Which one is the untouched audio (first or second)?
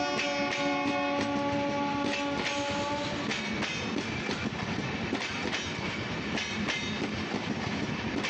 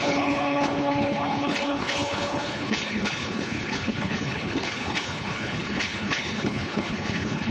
first